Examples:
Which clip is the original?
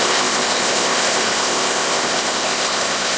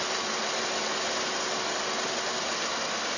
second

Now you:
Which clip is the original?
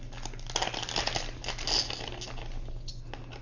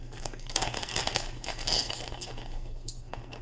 first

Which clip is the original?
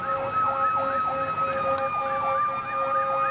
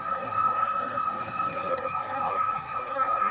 first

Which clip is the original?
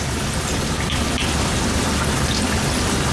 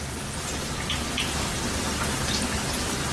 second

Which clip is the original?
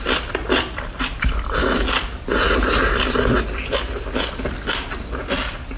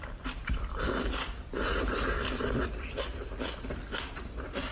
first